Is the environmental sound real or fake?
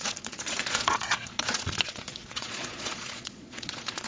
fake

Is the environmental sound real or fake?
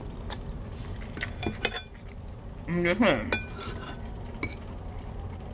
real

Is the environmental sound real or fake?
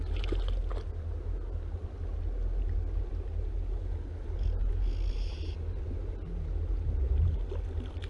real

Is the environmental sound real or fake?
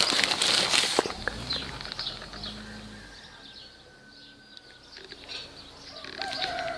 real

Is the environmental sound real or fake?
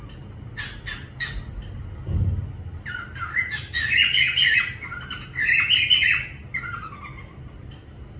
real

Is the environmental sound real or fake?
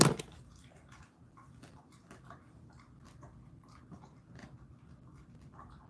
real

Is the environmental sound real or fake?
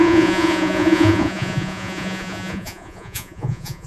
fake